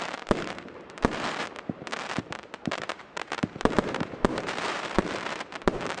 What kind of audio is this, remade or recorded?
remade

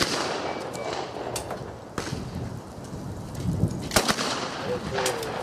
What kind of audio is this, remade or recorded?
recorded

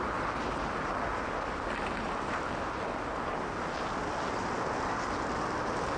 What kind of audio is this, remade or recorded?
recorded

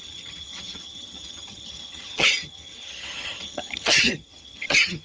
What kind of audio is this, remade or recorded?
remade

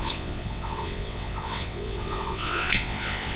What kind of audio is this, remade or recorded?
remade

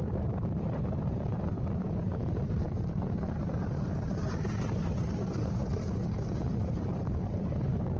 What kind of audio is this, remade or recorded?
remade